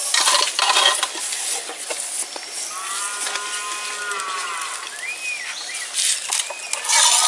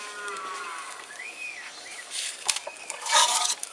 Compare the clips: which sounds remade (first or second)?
second